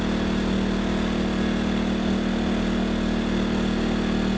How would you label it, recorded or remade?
recorded